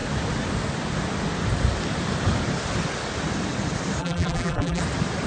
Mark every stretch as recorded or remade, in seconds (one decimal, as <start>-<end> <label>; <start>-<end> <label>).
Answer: 0.0-4.0 recorded; 4.0-4.8 remade; 4.8-5.3 recorded